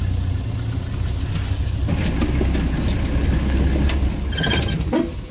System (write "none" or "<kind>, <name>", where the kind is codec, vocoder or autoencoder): none